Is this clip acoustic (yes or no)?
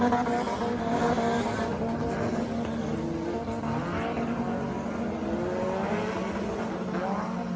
yes